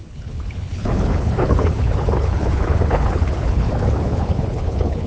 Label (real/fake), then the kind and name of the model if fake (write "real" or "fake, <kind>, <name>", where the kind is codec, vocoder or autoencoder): fake, codec, HILCodec